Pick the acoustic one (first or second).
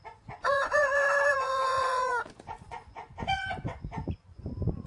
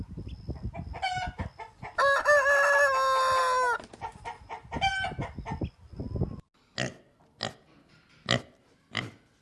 second